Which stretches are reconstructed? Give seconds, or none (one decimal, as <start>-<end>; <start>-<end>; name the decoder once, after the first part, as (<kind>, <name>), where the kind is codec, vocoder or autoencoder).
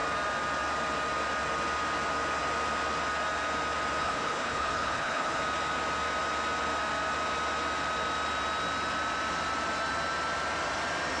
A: 4.0-5.4 (codec, HILCodec)